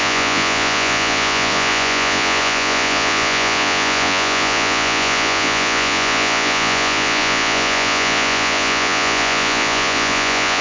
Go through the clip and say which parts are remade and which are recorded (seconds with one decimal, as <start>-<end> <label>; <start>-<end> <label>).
0.0-10.6 remade